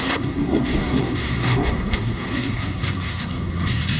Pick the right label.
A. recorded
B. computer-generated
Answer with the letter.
B